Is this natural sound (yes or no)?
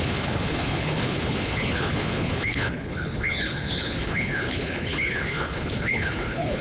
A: no